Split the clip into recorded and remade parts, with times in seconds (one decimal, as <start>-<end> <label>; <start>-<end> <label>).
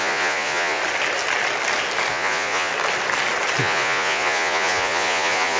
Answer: 0.0-0.8 remade; 0.8-2.1 recorded; 2.1-2.7 remade; 2.7-3.6 recorded; 3.6-5.6 remade